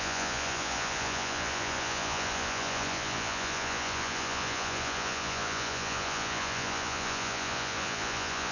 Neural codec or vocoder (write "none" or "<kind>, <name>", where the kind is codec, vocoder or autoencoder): vocoder, Vocos